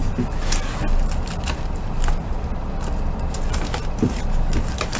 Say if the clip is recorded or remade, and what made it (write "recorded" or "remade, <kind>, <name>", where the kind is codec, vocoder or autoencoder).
recorded